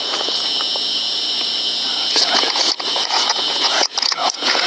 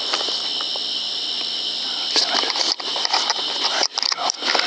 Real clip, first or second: second